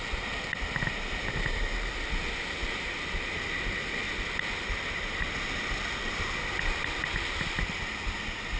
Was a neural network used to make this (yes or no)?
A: no